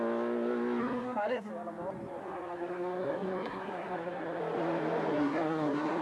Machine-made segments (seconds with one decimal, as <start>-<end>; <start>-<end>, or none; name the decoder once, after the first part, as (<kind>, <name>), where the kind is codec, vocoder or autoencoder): 0.8-1.5 (codec, SNAC); 2.2-4.4; 5.1-6.0